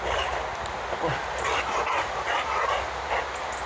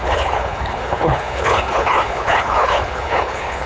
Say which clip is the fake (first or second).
second